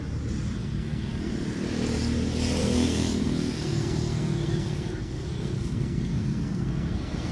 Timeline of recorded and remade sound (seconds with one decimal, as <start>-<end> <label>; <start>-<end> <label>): 0.0-0.6 recorded; 0.6-1.3 remade; 1.3-2.6 recorded; 2.6-7.3 remade